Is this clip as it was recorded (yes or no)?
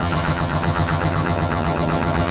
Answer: no